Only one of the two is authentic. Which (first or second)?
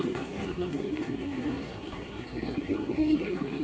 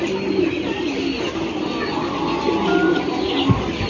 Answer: second